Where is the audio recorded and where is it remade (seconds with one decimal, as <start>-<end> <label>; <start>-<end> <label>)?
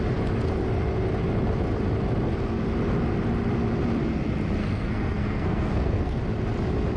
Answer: 0.0-4.6 recorded; 4.6-6.2 remade; 6.2-7.0 recorded